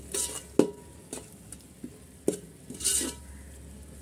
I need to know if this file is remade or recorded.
recorded